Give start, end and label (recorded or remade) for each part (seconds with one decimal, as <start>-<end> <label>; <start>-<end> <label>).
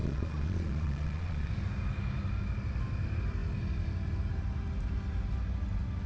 0.0-1.5 remade; 1.5-6.1 recorded